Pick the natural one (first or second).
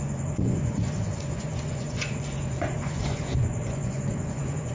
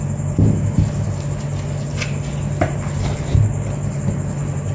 second